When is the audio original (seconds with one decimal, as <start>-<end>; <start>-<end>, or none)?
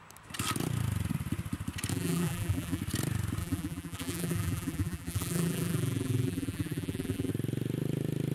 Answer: 0.0-1.9; 2.8-3.4; 7.3-8.3